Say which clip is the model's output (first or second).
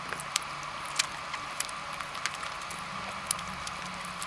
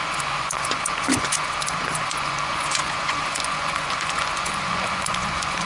second